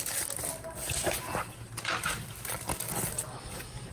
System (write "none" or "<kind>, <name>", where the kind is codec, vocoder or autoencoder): none